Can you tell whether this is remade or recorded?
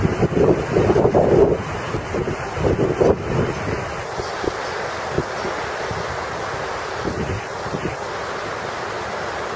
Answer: recorded